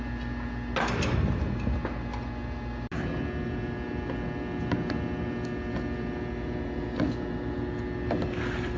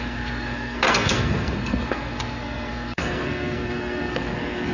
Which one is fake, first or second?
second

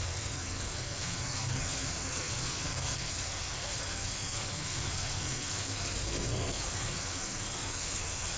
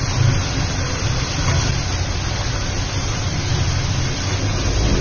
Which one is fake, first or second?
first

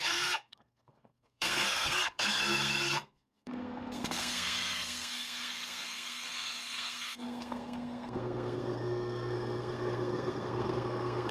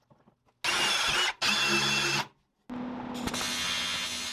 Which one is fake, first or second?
first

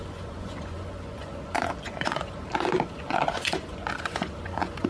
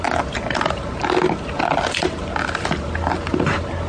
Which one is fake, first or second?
first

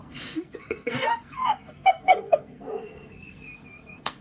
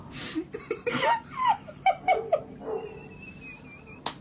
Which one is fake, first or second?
first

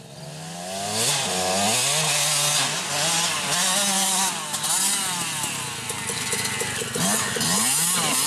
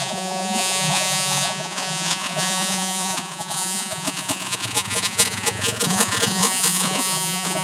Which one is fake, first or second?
second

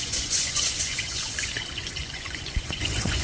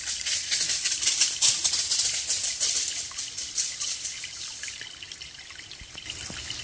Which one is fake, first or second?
first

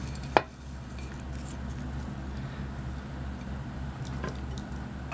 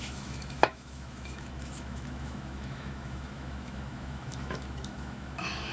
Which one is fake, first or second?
second